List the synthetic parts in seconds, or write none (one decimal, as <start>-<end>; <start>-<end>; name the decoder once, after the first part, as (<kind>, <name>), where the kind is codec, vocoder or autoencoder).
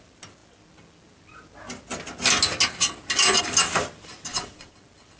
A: 4.3-4.8 (vocoder, Vocos)